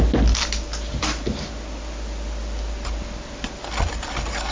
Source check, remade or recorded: recorded